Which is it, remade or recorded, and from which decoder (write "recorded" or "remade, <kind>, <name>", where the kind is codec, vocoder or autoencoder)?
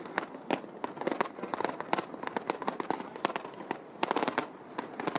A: recorded